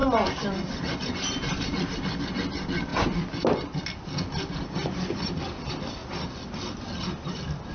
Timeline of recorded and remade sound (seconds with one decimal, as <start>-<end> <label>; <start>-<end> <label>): 0.0-7.7 recorded